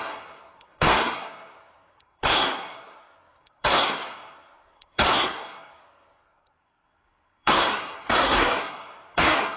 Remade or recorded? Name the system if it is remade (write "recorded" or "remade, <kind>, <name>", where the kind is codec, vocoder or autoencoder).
remade, codec, SNAC